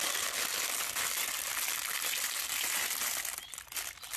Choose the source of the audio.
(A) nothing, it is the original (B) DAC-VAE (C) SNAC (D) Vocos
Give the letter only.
A